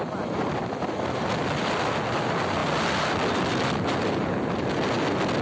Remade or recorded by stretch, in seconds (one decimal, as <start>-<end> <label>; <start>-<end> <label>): 0.0-5.4 recorded